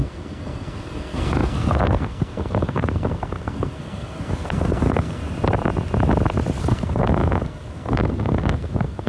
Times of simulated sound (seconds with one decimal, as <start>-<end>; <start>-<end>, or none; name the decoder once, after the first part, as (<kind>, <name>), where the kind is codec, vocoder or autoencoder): 0.0-5.2 (codec, SNAC); 6.6-9.1